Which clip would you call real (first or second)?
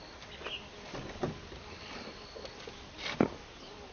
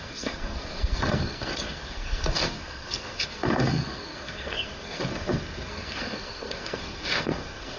first